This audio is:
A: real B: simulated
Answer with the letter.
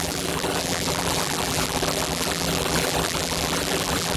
B